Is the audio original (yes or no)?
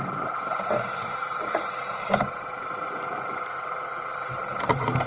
no